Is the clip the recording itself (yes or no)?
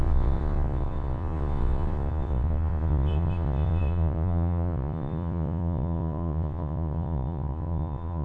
no